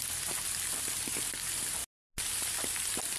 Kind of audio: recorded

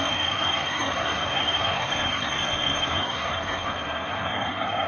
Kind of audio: remade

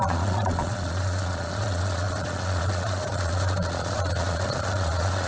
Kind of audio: remade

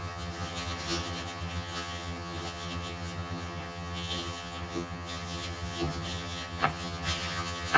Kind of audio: remade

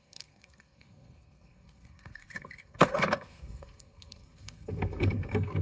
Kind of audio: remade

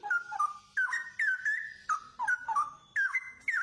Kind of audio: recorded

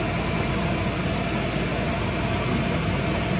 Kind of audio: recorded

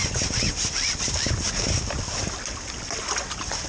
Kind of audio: recorded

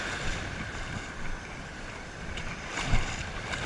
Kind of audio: recorded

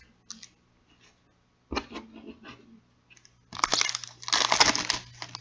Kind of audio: recorded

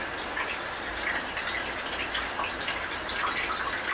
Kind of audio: recorded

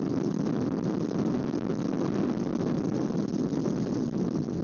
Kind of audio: recorded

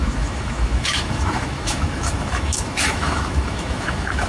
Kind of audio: remade